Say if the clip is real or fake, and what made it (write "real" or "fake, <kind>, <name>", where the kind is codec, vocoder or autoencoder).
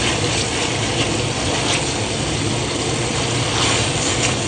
real